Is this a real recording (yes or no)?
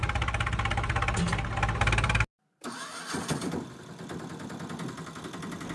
yes